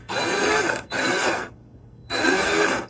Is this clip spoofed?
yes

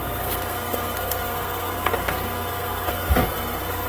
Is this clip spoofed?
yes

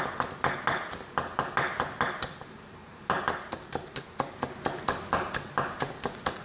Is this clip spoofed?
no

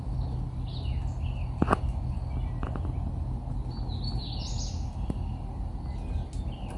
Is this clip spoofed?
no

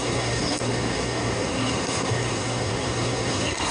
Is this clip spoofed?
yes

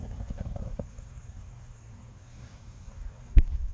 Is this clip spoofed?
yes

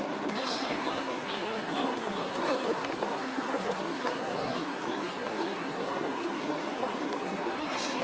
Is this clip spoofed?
yes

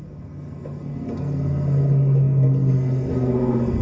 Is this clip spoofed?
yes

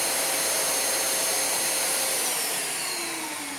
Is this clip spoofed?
no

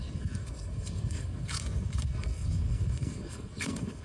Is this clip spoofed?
yes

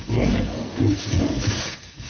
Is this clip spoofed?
yes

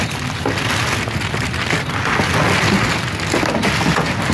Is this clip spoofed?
no